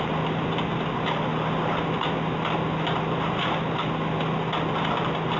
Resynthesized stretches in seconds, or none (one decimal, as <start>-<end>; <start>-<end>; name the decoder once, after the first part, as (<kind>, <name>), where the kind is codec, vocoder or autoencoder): none